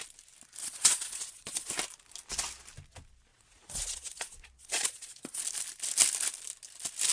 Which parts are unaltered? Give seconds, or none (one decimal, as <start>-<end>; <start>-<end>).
0.0-0.6; 1.7-3.3; 5.4-7.1

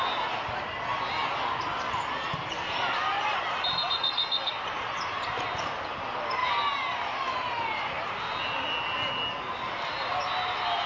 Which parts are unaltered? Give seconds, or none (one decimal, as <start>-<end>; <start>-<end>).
0.0-10.9

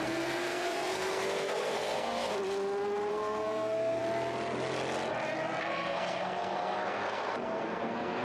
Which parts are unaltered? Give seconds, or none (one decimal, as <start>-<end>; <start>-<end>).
2.3-3.1; 4.0-5.6